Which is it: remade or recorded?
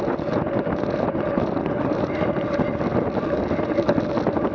recorded